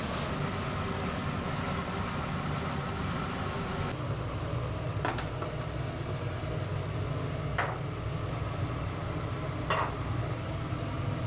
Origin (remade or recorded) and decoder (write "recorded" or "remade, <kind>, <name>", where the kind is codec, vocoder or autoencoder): recorded